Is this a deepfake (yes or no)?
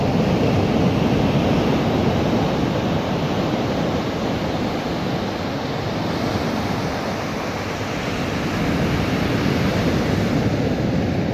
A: no